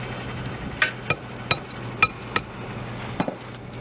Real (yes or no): yes